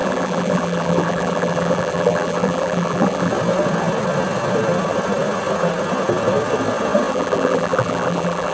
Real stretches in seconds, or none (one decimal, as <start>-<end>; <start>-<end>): 3.3-7.1